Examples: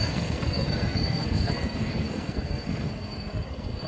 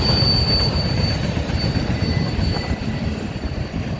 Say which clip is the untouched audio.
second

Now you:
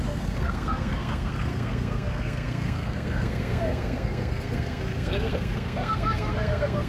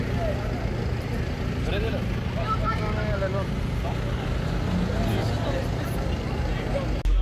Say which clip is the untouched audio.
second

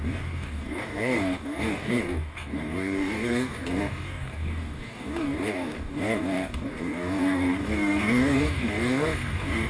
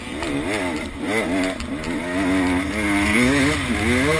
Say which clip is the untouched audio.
second